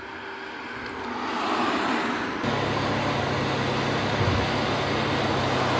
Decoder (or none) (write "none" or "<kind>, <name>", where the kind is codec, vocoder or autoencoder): none